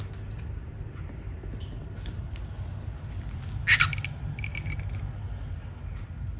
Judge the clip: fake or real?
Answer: real